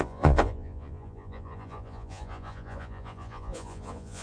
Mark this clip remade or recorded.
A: remade